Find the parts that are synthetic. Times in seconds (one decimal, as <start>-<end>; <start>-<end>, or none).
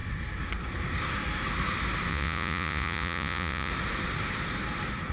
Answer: 2.1-3.7